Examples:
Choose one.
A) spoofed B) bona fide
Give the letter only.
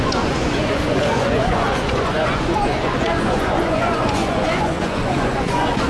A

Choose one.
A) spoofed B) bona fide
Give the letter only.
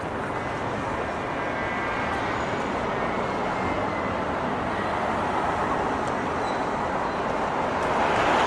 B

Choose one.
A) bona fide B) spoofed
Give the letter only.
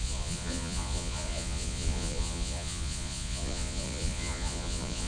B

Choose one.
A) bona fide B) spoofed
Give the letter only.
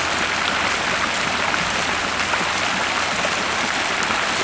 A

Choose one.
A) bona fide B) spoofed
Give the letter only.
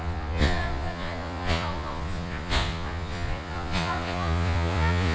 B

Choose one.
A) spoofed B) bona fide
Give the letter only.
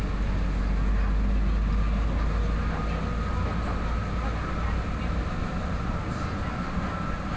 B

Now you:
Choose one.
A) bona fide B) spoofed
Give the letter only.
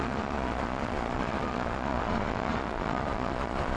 B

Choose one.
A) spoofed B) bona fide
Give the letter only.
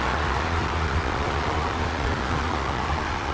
A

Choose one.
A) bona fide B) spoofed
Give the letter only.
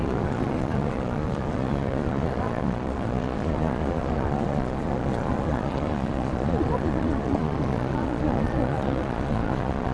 B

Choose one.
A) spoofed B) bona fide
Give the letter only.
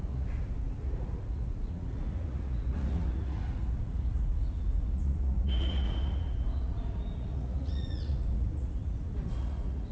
A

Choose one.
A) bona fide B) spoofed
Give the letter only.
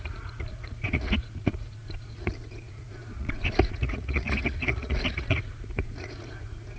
B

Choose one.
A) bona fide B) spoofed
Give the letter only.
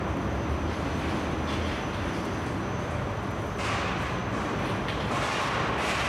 A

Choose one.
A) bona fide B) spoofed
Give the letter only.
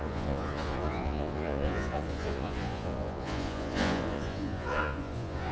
B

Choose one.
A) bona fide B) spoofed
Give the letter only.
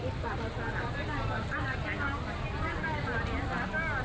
A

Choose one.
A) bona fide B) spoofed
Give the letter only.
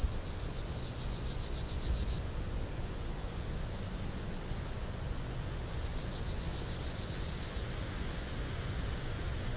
B